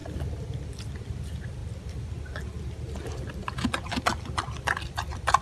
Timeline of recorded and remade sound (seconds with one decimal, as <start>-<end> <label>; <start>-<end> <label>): 0.0-5.4 recorded